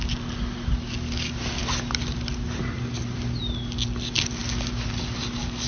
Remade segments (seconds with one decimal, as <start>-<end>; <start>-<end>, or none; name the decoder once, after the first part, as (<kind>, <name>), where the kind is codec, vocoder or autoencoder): none